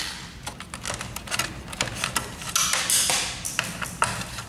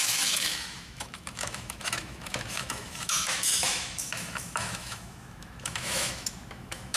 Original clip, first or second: first